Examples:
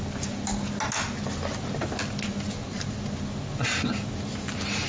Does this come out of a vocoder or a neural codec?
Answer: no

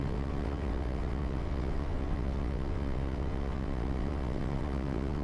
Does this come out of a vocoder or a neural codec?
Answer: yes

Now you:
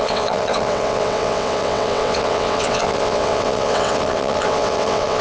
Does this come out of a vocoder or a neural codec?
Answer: yes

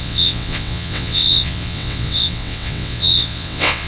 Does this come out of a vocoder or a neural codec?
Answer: yes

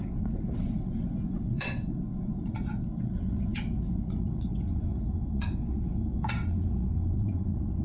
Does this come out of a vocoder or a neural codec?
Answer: yes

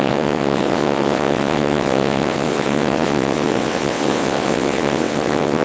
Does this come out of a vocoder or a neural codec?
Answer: yes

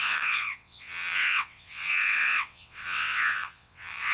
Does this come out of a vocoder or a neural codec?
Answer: yes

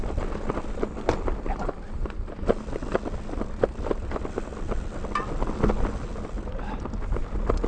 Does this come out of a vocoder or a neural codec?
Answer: no